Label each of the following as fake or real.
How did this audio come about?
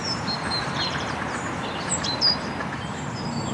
fake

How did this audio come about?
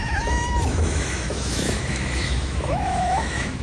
fake